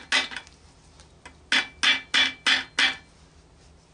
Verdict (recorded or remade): recorded